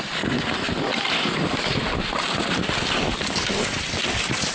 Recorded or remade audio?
recorded